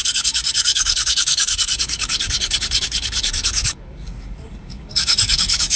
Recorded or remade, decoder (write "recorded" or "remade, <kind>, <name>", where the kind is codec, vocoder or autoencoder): remade, codec, DAC